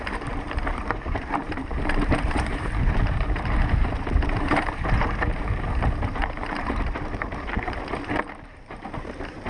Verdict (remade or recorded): remade